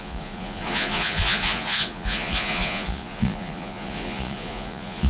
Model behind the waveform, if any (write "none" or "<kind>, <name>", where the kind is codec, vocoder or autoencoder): vocoder, Vocos